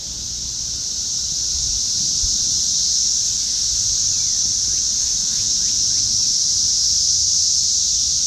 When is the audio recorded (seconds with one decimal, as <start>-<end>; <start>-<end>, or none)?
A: 0.0-5.0; 5.5-8.3